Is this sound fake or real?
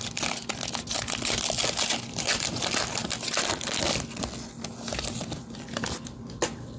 real